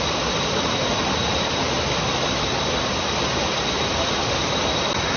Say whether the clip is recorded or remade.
recorded